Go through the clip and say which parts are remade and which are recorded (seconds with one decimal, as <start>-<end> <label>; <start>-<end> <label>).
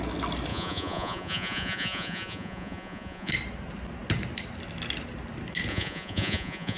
0.0-0.5 recorded; 0.5-3.3 remade; 3.3-5.7 recorded; 5.7-6.8 remade